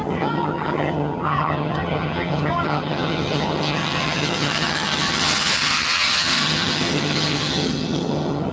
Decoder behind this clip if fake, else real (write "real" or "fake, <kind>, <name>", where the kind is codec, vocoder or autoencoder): fake, vocoder, HiFi-GAN